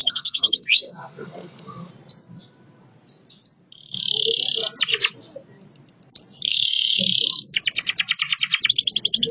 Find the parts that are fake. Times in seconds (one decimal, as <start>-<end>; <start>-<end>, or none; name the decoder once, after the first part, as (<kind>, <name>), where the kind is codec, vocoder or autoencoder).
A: 0.0-1.9 (codec, SNAC); 6.5-7.0